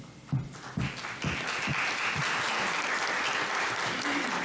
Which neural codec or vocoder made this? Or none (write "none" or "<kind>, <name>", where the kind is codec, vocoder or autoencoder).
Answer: none